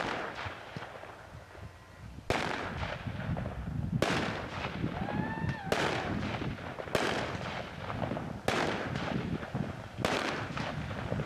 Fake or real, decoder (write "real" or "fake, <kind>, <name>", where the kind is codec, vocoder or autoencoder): real